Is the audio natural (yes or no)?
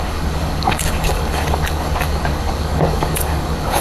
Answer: no